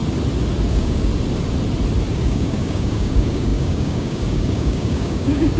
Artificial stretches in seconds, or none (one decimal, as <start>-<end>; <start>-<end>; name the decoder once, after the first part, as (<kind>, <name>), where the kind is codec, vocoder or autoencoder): 0.7-1.1 (codec, DAC); 2.1-5.6